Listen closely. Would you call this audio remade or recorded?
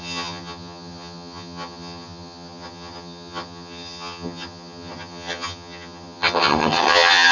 remade